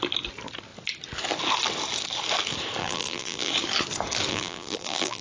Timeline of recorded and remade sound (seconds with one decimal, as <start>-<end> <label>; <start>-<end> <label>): 0.0-2.8 recorded; 2.8-3.5 remade; 3.5-4.3 recorded; 4.3-5.2 remade